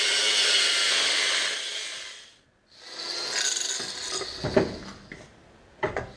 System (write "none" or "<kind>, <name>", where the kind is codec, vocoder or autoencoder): none